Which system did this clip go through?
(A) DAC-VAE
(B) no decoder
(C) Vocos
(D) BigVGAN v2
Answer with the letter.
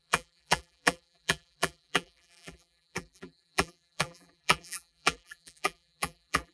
D